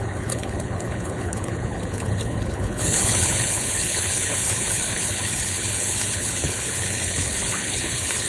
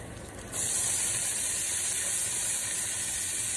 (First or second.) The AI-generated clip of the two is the first